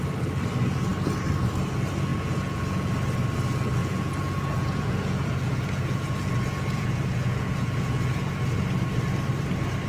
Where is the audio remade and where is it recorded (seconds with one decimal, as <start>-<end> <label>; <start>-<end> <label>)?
0.0-2.1 recorded; 2.1-2.9 remade; 2.9-3.8 recorded; 3.8-8.6 remade; 8.6-9.9 recorded